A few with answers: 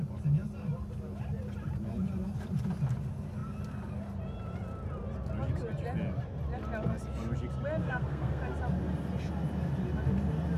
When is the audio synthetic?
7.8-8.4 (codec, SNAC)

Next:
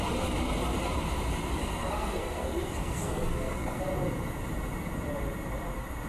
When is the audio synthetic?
1.6-3.8 (codec, SNAC)

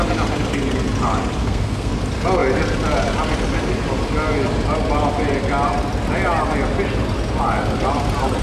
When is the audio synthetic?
1.4-1.9 (codec, SNAC)

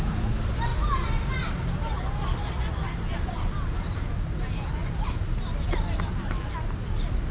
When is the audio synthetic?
none

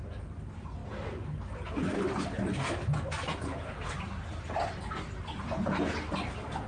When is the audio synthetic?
none

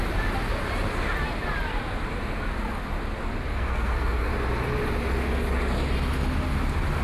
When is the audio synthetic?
3.5-4.3 (codec, SNAC)